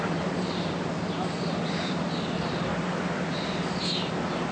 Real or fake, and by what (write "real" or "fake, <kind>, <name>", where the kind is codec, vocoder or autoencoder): real